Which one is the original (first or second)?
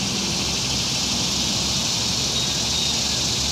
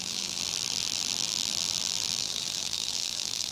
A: first